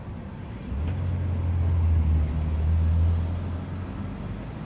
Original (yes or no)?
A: yes